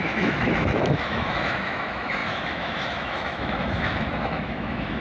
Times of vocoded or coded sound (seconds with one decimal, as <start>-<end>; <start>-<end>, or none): 0.0-5.0